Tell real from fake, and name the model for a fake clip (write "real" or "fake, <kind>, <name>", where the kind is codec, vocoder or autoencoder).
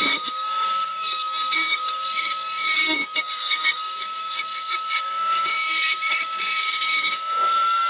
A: fake, codec, SNAC